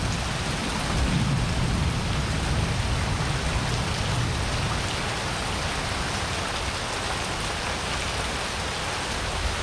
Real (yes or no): yes